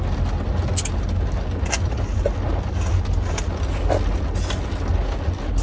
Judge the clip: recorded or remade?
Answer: recorded